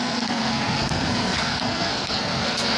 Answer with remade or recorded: remade